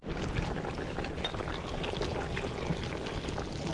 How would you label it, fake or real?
real